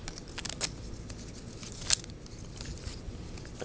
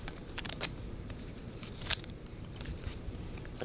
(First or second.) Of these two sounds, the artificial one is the second